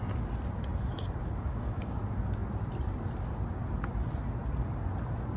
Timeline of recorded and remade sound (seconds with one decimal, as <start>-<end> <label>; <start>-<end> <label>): 0.0-1.2 recorded; 1.2-2.0 remade; 2.0-5.4 recorded